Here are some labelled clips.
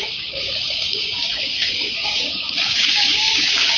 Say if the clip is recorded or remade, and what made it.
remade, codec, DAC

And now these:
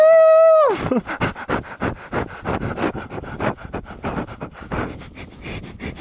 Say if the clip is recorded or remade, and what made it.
recorded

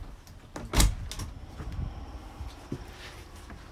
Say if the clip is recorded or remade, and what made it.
recorded